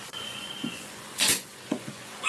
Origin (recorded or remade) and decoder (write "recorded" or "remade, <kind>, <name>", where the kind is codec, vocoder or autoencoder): remade, vocoder, Vocos